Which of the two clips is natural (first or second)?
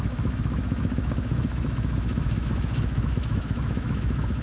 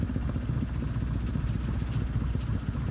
second